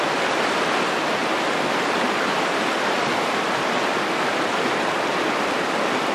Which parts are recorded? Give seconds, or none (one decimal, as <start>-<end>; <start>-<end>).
0.0-6.1